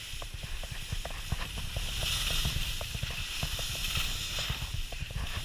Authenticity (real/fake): real